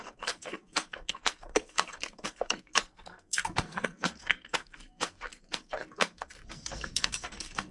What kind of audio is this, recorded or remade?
remade